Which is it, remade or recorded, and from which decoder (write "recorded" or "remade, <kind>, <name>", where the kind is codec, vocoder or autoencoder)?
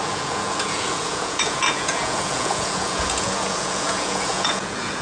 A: remade, vocoder, Vocos